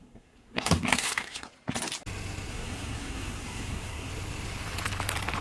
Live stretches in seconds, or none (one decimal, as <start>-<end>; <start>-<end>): 1.5-2.5; 4.1-5.4